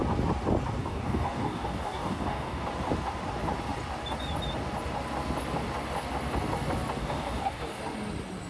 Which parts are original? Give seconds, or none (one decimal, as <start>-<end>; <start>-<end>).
0.0-0.8; 2.6-7.0; 7.8-8.5